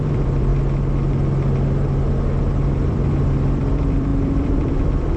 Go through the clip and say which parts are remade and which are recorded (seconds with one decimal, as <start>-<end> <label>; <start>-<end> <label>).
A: 0.0-0.5 remade; 0.5-2.9 recorded; 2.9-5.2 remade